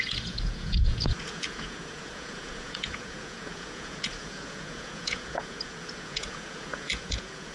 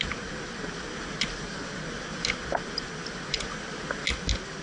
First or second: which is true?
second